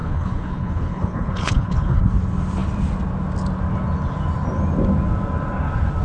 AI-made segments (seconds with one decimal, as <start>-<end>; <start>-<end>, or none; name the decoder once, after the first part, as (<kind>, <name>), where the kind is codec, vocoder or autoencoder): 0.0-2.0 (codec, HILCodec)